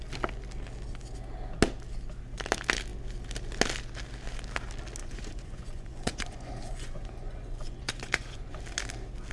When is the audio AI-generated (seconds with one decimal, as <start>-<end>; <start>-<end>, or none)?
5.0-8.6